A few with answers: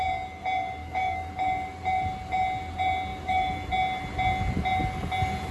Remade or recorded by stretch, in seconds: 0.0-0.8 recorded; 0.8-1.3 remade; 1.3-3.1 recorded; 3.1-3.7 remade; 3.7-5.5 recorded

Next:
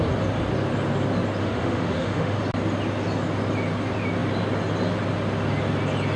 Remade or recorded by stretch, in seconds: 0.0-1.4 recorded; 1.4-2.4 remade; 2.4-6.2 recorded